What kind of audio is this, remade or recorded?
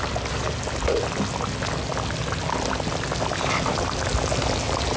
recorded